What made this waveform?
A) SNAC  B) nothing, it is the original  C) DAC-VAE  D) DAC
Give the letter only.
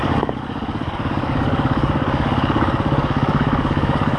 D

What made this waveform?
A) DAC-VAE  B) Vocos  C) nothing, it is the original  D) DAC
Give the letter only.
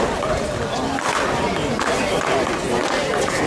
C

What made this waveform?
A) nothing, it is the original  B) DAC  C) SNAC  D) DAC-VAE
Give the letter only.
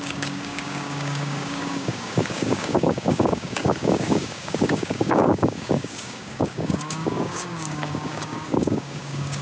B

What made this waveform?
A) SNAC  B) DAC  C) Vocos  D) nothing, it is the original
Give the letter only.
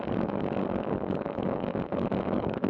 B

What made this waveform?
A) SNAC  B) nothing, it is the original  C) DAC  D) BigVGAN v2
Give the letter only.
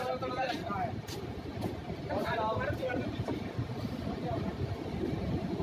B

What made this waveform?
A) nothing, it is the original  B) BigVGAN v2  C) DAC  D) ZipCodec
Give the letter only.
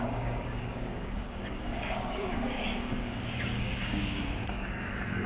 C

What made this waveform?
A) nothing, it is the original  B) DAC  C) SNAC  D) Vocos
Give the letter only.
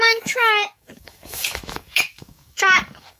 B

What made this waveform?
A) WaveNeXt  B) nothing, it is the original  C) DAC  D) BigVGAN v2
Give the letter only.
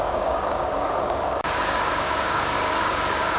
C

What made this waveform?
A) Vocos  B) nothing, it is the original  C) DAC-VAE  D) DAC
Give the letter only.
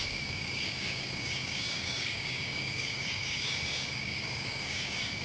D